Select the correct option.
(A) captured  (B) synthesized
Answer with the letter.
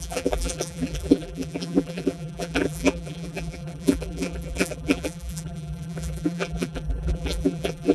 B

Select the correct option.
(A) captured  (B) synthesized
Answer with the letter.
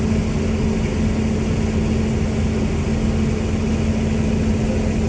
A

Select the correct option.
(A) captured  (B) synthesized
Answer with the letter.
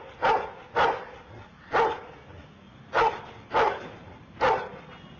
A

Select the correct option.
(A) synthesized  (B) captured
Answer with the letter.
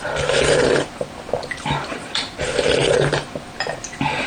A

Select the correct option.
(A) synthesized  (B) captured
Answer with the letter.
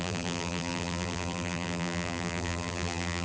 A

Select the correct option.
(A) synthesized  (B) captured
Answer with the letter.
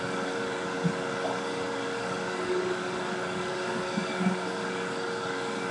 A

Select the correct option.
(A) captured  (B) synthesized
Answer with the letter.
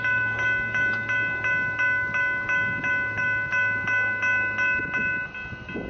A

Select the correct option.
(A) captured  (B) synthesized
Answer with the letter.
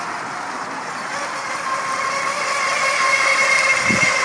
A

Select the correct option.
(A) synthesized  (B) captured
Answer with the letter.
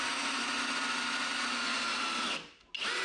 B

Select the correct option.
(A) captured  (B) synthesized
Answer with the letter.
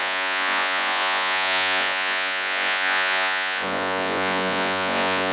B